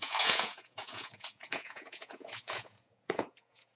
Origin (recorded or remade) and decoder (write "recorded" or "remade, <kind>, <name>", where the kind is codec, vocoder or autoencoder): remade, vocoder, Vocos